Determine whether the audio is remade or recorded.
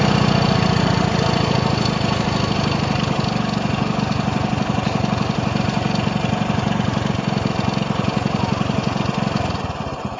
recorded